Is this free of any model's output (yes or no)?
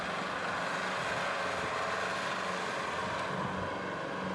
yes